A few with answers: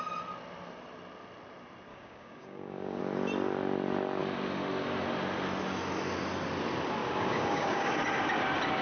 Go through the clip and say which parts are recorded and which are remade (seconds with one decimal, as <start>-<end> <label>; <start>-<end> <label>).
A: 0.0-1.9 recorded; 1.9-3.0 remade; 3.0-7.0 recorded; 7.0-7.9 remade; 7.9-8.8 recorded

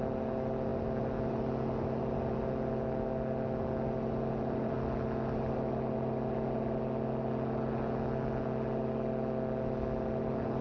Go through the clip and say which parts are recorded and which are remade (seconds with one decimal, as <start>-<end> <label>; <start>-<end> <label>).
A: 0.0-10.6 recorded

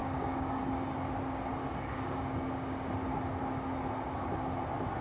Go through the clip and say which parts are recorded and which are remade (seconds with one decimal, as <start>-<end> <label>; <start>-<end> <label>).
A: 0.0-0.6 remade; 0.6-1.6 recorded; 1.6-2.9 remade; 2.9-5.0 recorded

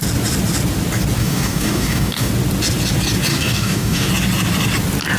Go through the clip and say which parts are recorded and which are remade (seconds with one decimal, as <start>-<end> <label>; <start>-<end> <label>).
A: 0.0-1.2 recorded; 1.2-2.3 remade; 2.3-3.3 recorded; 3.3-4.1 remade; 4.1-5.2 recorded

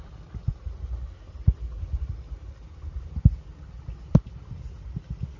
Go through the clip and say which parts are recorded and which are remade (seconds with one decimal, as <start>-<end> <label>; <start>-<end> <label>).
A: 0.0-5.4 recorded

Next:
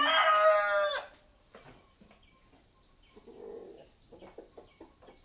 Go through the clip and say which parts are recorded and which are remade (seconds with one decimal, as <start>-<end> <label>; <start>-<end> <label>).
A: 0.0-5.2 recorded

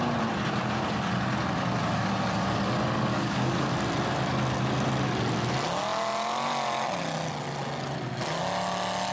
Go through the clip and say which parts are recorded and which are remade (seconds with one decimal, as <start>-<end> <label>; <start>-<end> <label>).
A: 0.0-3.1 recorded; 3.1-3.7 remade; 3.7-9.1 recorded